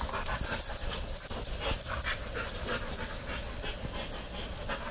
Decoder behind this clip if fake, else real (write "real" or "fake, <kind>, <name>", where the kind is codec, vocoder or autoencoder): real